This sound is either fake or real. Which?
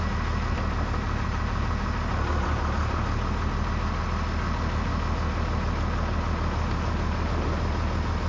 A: real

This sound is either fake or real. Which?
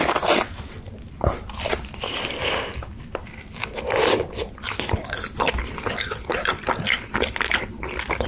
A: real